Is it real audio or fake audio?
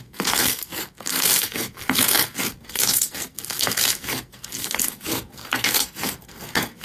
fake